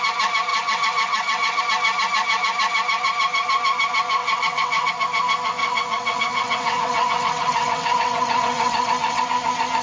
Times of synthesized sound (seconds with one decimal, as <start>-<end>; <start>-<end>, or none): 0.5-1.6; 4.2-4.9; 5.6-9.2